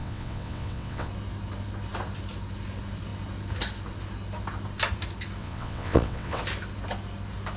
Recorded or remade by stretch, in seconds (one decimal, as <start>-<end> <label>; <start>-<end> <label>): 0.0-1.1 remade; 1.1-5.4 recorded; 5.4-6.4 remade; 6.4-7.6 recorded